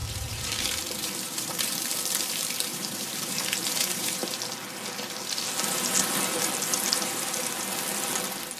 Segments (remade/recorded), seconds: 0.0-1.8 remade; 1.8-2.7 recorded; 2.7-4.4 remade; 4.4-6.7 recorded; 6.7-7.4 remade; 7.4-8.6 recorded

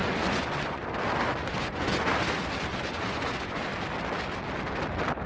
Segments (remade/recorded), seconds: 0.0-0.8 remade; 0.8-1.4 recorded; 1.4-2.1 remade; 2.1-2.7 recorded; 2.7-3.6 remade; 3.6-5.3 recorded

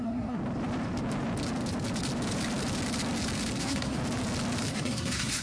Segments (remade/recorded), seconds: 0.0-0.4 remade; 0.4-3.6 recorded; 3.6-4.0 remade; 4.0-4.7 recorded; 4.7-5.4 remade

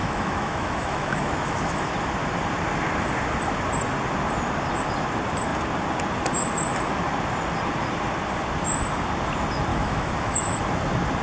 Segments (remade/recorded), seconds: 0.0-1.9 remade; 1.9-9.7 recorded; 9.7-10.6 remade; 10.6-11.2 recorded

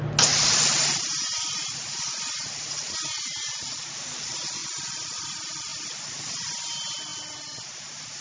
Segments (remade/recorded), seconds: 0.0-1.3 recorded; 1.3-4.0 remade; 4.0-4.6 recorded; 4.6-5.2 remade; 5.2-5.7 recorded; 5.7-6.2 remade; 6.2-8.2 recorded

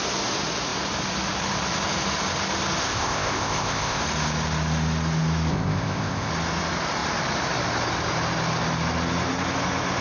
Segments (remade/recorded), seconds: 0.0-2.8 recorded; 2.8-4.0 remade; 4.0-5.5 recorded; 5.5-6.3 remade; 6.3-10.0 recorded

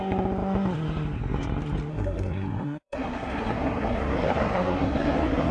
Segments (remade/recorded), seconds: 0.0-1.9 recorded; 1.9-5.5 remade